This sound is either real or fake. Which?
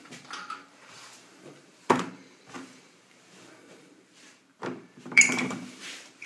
fake